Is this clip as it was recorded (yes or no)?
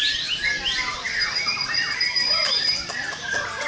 yes